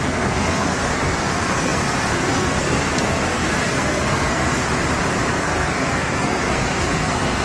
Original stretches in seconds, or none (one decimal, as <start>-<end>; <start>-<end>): 4.6-5.3